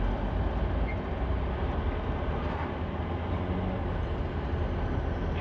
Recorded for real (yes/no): yes